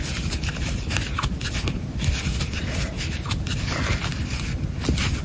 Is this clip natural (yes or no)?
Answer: yes